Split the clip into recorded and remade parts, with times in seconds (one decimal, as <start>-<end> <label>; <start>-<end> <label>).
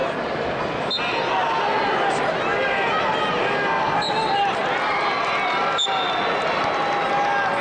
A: 0.0-7.6 recorded